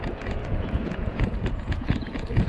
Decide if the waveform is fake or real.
fake